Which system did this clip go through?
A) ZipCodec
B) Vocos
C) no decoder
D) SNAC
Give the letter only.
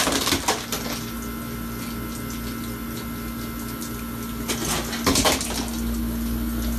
C